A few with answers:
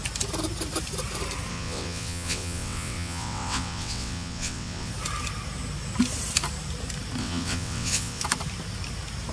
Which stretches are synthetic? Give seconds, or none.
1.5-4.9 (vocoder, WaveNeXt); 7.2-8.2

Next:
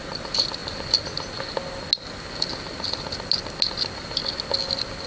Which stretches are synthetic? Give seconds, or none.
none

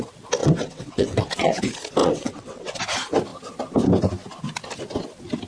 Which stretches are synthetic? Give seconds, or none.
0.4-1.6 (vocoder, WaveNeXt); 2.0-2.8